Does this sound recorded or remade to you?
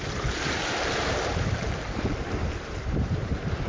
remade